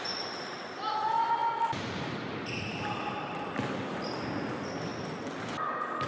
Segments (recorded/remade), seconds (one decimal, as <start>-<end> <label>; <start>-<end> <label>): 0.0-6.1 recorded